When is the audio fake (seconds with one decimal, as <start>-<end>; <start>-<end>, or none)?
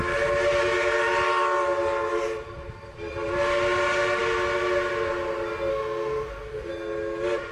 5.7-6.7